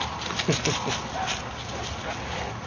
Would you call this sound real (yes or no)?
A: yes